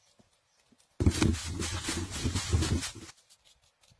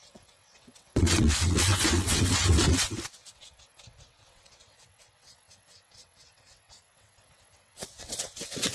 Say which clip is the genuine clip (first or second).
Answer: first